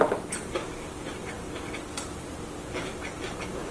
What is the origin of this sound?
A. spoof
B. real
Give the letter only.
B